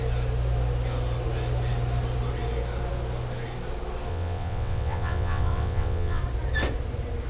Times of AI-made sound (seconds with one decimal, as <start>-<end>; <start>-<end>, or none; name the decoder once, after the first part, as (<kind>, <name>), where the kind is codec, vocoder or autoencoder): 4.1-6.2 (vocoder, WaveNeXt)